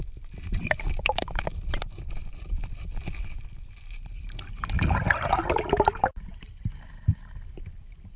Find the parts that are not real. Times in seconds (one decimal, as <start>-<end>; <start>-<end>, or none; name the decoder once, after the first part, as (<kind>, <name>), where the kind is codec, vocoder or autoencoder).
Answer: none